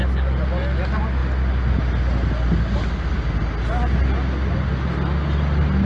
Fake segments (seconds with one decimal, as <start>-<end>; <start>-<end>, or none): none